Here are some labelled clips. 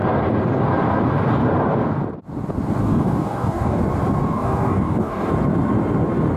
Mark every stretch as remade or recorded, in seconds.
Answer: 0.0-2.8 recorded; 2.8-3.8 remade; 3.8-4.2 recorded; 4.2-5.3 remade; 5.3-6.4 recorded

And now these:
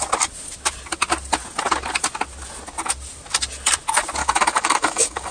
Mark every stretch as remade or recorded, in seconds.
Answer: 0.0-4.2 recorded; 4.2-5.3 remade

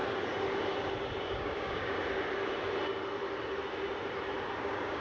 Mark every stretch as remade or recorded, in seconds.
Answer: 0.0-1.2 recorded; 1.2-2.0 remade; 2.0-4.6 recorded; 4.6-5.0 remade

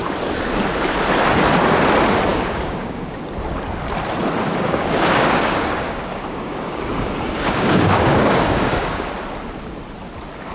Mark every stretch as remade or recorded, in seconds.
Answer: 0.0-2.3 recorded; 2.3-3.2 remade; 3.2-4.5 recorded; 4.5-9.1 remade; 9.1-10.5 recorded

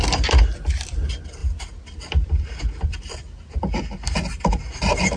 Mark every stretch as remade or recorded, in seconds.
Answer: 0.0-5.2 recorded

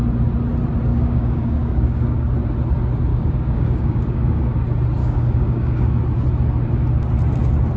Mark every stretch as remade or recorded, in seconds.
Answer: 0.0-0.9 recorded; 0.9-2.3 remade; 2.3-3.1 recorded; 3.1-4.6 remade; 4.6-5.0 recorded; 5.0-6.0 remade; 6.0-7.8 recorded

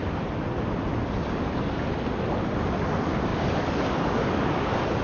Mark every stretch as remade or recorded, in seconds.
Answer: 0.0-3.3 recorded; 3.3-4.5 remade; 4.5-5.0 recorded

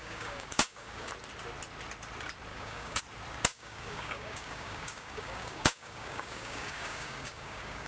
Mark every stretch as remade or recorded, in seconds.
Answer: 0.0-1.1 remade; 1.1-2.5 recorded; 2.5-3.0 remade; 3.0-3.5 recorded; 3.5-7.9 remade